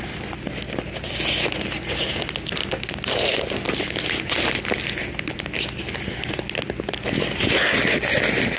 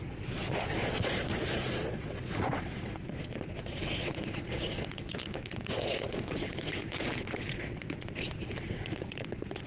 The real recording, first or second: first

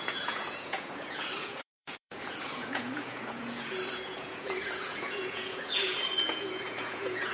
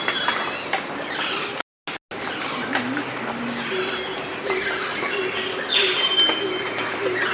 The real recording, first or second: second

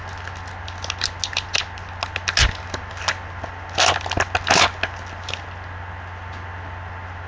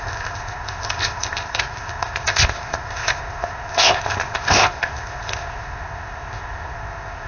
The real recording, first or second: first